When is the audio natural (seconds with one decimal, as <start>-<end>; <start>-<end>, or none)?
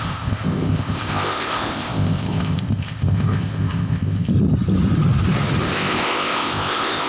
4.3-5.6